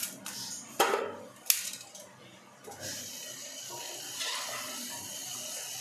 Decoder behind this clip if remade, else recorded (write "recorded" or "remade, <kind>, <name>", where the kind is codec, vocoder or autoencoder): recorded